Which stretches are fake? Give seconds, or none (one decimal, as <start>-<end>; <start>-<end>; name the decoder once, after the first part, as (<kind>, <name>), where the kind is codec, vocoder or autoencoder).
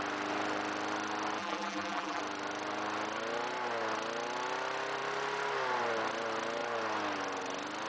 1.4-2.2 (vocoder, BigVGAN v2)